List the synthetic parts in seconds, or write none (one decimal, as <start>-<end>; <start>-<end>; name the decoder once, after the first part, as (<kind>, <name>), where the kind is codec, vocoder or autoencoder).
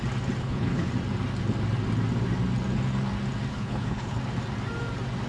0.4-0.9 (codec, HILCodec); 3.5-4.2